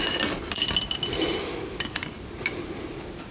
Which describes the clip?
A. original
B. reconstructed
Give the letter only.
A